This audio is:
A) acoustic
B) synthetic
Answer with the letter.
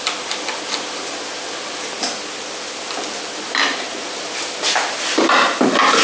A